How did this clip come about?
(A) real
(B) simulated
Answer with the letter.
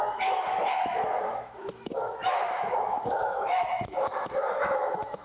B